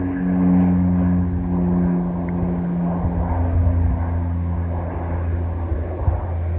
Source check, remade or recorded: recorded